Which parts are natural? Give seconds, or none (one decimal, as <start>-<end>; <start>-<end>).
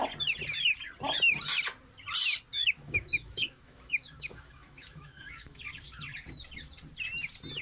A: 0.0-2.5; 5.6-7.6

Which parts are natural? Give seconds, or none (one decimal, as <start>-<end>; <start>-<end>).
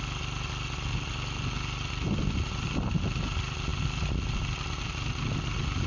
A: 0.0-5.9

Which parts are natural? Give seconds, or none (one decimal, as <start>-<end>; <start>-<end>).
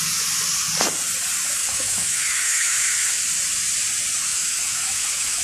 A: 0.0-1.6; 3.2-4.3